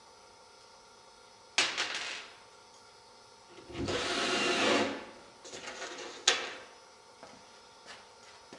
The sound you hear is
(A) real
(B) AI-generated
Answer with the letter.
A